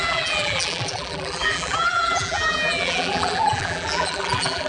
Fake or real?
fake